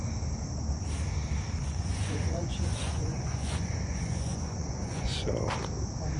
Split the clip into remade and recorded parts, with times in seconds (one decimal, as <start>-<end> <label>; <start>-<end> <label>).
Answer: 0.0-1.6 recorded; 1.6-5.3 remade; 5.3-6.2 recorded